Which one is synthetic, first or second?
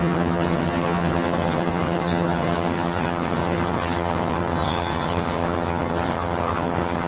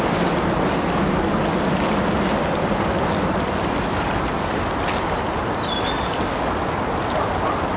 first